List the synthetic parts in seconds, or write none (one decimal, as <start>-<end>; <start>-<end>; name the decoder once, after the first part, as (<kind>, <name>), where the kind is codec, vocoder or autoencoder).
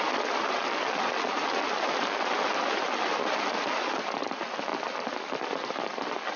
none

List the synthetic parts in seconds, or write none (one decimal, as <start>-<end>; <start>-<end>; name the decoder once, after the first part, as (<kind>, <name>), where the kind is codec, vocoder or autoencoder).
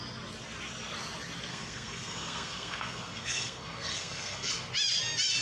1.5-4.5 (codec, SNAC)